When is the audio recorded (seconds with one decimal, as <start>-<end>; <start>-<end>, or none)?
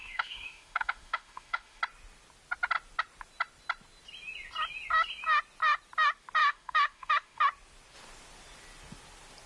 1.8-6.4; 7.4-9.5